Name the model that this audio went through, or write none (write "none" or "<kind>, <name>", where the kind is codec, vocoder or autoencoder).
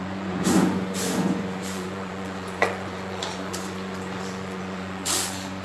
vocoder, Vocos